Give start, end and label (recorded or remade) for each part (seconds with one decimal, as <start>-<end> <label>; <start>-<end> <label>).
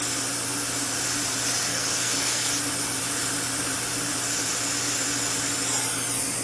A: 0.0-1.7 recorded; 1.7-2.5 remade; 2.5-6.4 recorded